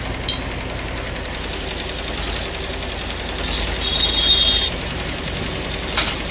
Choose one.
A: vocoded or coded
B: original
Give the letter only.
B